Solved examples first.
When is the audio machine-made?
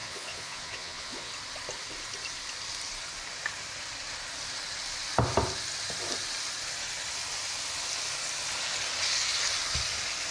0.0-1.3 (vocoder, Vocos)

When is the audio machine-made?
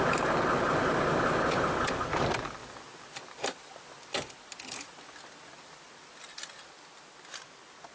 none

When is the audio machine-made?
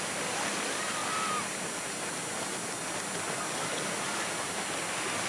none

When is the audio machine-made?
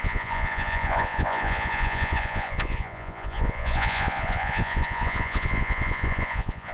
0.0-6.7 (vocoder, Vocos)